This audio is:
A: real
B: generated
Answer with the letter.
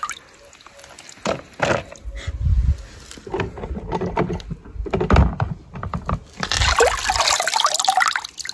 A